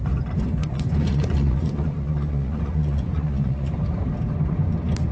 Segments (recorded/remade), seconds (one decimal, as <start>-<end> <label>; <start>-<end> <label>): 0.0-0.6 recorded; 0.6-3.7 remade; 3.7-5.1 recorded